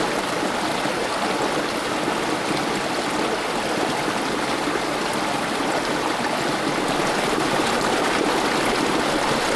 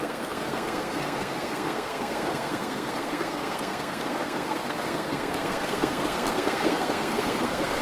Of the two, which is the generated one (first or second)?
second